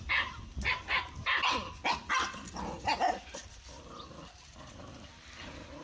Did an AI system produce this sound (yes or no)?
no